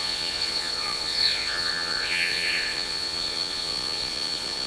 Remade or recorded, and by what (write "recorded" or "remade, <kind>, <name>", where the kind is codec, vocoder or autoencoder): remade, vocoder, Vocos